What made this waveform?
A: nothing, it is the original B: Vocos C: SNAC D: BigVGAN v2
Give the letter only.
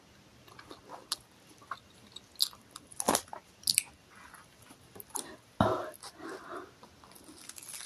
A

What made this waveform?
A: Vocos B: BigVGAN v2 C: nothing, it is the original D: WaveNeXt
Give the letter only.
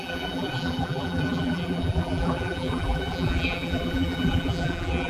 B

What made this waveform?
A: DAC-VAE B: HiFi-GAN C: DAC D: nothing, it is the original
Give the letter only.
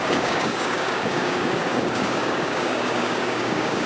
C